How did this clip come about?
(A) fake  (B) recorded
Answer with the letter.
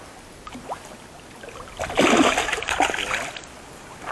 B